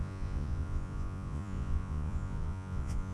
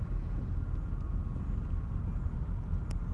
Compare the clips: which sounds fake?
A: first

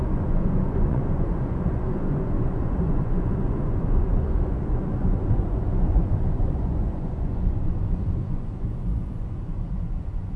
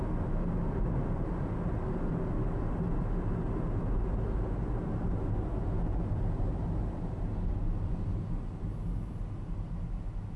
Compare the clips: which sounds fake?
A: first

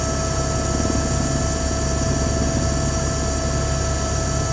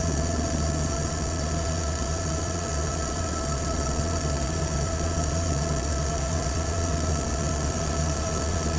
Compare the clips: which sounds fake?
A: second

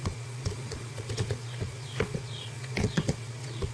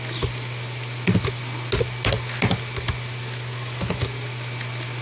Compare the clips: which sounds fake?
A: first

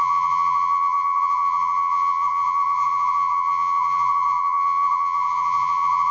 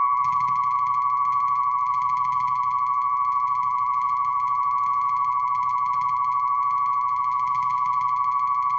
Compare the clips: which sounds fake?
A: first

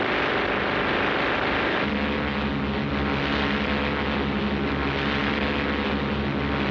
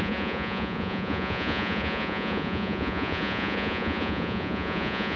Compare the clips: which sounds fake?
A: second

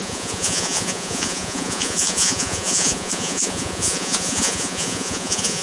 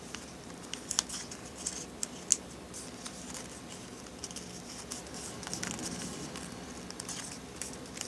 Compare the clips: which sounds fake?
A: first